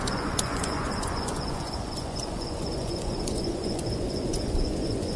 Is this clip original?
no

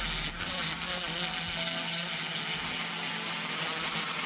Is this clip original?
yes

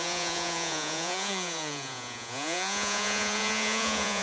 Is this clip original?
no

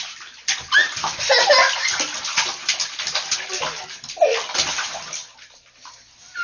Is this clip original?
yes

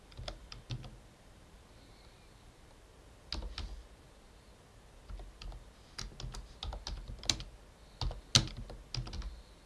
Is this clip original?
yes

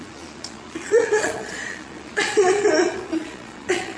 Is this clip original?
no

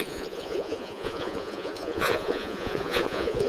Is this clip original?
no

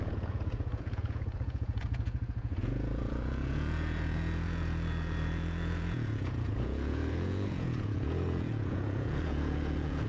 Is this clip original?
no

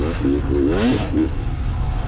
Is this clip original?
yes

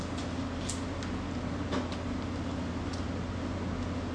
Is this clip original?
yes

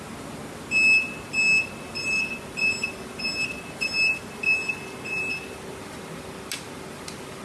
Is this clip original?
yes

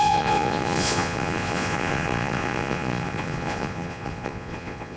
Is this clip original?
no